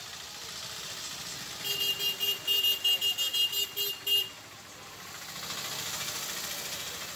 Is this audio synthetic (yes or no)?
no